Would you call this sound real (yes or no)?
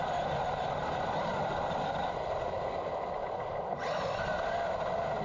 yes